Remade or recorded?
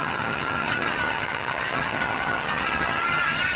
remade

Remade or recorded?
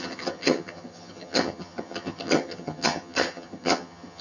remade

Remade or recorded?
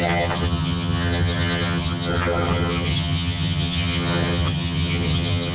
remade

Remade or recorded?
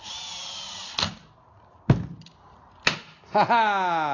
recorded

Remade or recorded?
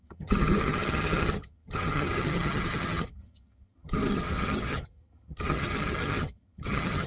remade